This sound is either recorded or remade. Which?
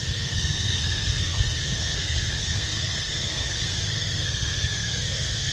remade